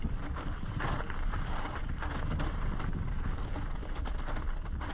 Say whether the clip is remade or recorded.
recorded